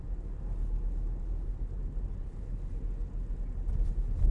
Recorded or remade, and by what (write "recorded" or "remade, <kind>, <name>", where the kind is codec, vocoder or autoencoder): recorded